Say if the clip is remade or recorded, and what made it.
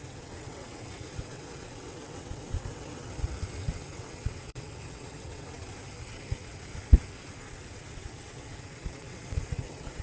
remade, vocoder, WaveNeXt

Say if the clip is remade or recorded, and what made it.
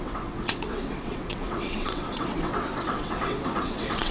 remade, vocoder, WaveNeXt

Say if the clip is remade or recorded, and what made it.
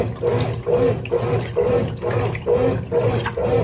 recorded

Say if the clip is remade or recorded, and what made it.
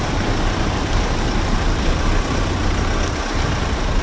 recorded